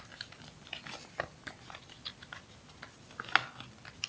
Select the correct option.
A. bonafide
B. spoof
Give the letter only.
A